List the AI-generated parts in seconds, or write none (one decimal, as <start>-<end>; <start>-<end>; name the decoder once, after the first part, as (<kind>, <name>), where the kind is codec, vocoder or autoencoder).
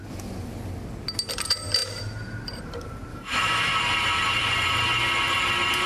3.1-3.7 (autoencoder, DAC-VAE)